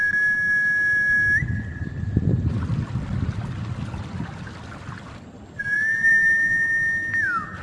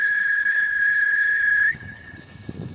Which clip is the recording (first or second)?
first